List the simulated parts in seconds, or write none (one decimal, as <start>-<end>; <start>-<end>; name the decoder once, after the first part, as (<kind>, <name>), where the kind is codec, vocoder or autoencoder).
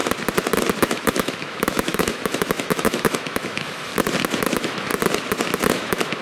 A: 0.8-3.9 (autoencoder, DAC-VAE); 4.5-4.9; 5.7-6.2